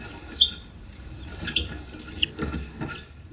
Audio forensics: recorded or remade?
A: recorded